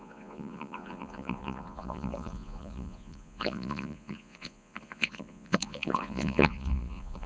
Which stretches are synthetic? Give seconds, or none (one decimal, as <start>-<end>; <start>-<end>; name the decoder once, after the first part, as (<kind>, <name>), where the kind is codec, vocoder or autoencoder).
0.0-7.3 (vocoder, Vocos)